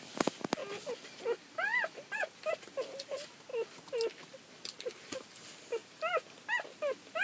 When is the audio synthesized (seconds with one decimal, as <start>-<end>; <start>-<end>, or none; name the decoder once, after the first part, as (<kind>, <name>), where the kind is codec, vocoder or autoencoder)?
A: none